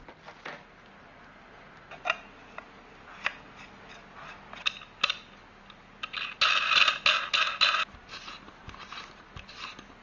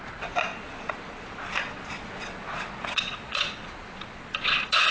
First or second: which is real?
first